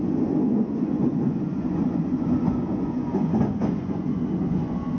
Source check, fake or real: fake